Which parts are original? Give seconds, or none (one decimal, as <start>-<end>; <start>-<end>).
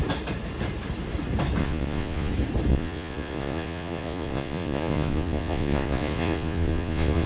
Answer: 0.0-1.6; 2.3-2.7